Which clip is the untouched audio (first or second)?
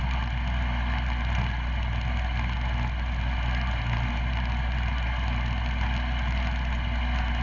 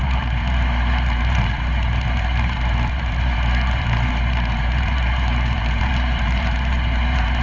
first